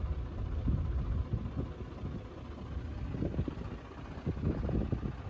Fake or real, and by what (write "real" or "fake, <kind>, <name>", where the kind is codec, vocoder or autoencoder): real